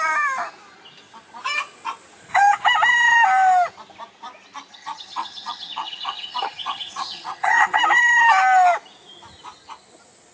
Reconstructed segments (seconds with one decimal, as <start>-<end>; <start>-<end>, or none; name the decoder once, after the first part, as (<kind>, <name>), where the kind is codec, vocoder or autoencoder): 4.7-7.8 (vocoder, HiFi-GAN)

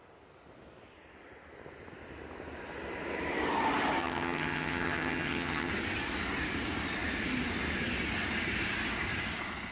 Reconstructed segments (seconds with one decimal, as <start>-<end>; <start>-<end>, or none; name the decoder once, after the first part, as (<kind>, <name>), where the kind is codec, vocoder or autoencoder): 4.0-5.7 (vocoder, HiFi-GAN)

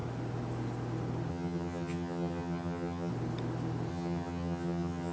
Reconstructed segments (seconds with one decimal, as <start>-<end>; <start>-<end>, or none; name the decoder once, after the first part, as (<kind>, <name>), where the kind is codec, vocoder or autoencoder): 1.3-3.1 (vocoder, HiFi-GAN); 3.9-5.1